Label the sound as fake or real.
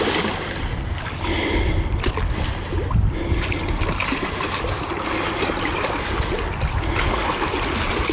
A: real